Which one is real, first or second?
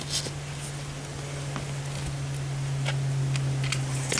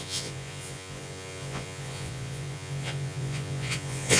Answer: first